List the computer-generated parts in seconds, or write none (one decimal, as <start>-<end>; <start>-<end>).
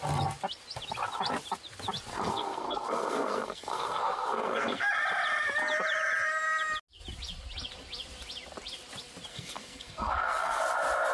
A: 2.1-4.9; 9.3-10.6